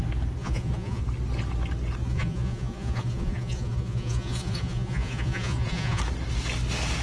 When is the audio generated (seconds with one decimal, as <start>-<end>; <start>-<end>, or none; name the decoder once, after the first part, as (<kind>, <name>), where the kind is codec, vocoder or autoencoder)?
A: 0.4-1.0 (vocoder, Vocos); 2.0-6.0